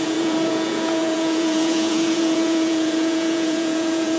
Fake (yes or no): yes